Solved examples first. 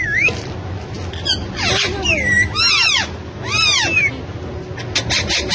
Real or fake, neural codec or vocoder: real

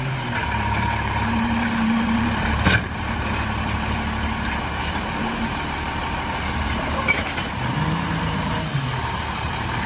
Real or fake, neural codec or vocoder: fake, vocoder, BigVGAN v2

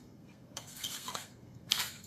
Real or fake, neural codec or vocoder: fake, codec, SNAC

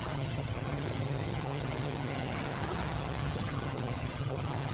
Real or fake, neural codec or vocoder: fake, vocoder, HiFi-GAN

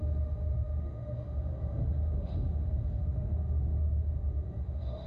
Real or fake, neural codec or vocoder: fake, autoencoder, DAC-VAE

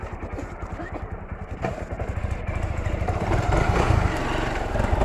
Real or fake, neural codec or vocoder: fake, vocoder, BigVGAN v2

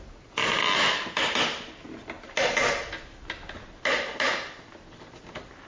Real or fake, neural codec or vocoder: real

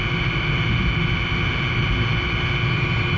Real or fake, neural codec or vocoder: real